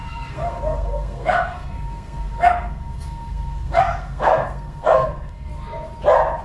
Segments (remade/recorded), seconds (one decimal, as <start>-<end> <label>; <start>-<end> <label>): 0.0-5.5 remade; 5.5-6.4 recorded